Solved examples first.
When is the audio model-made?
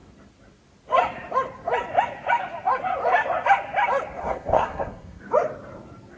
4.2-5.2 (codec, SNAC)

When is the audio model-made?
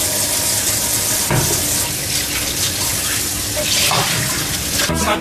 none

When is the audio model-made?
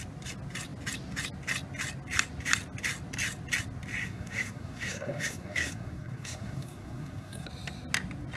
4.0-7.5 (codec, SNAC)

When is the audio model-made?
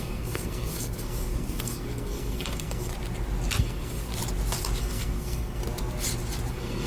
0.0-2.9 (codec, SNAC); 3.6-4.1; 4.8-5.6; 6.5-6.9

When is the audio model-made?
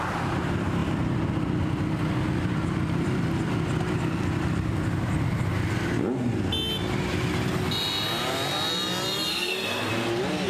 9.3-9.9 (codec, SNAC)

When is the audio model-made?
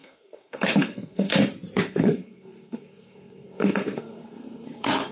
0.0-1.3 (codec, SNAC); 1.8-5.1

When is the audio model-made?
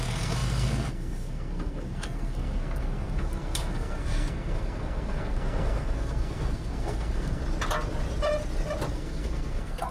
0.0-7.4 (codec, SNAC); 8.9-9.9